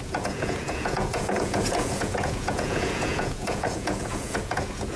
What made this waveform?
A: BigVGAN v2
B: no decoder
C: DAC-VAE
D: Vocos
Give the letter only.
D